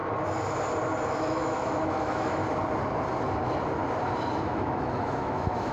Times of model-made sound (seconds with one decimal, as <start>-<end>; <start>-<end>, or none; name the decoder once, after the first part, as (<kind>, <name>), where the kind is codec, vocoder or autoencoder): 1.2-2.4 (autoencoder, DAC-VAE); 4.4-5.7